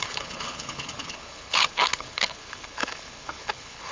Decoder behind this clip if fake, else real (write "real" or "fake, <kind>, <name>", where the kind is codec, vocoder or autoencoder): fake, codec, HILCodec